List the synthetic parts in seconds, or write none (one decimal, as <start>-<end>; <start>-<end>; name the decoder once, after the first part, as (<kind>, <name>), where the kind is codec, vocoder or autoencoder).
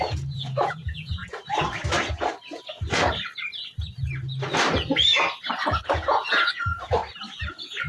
0.0-1.2 (vocoder, Vocos); 5.8-7.0; 7.5-7.9